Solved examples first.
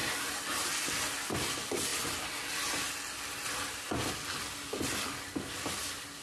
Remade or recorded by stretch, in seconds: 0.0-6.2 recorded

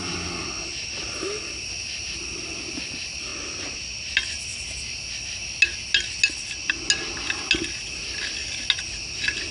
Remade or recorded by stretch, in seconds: 0.0-9.5 recorded

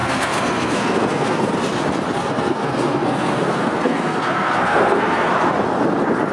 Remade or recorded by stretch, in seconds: 0.0-1.5 remade; 1.5-2.2 recorded; 2.2-5.3 remade; 5.3-6.3 recorded